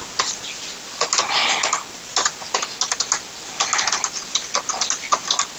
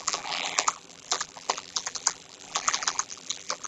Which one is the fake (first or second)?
second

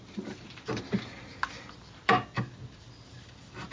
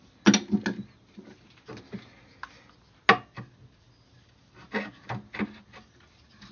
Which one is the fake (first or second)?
first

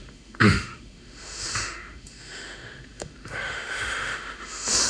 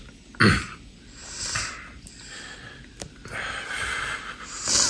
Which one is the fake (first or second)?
first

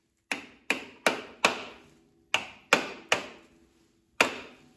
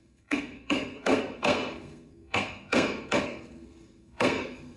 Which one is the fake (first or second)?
second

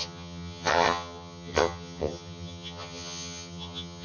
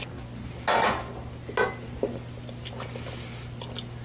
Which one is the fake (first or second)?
first